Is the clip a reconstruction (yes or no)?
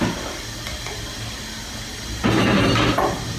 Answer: no